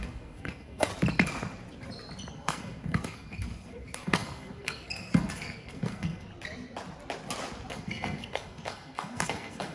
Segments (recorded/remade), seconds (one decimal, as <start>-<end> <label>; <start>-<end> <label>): 0.0-0.9 remade; 0.9-2.3 recorded; 2.3-6.3 remade; 6.3-7.7 recorded; 7.7-9.7 remade